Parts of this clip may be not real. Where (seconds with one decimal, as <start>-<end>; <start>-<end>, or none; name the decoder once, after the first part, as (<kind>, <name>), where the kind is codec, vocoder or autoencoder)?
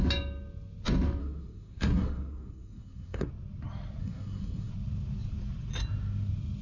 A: 1.2-3.3 (codec, SNAC); 4.0-4.7